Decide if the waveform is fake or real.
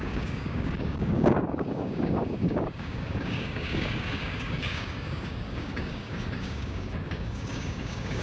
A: fake